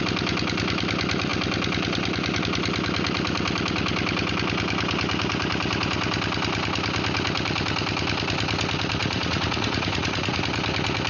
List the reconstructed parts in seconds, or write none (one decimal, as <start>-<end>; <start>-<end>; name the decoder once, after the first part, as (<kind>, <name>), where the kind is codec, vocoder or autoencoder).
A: 9.0-10.4 (vocoder, Vocos)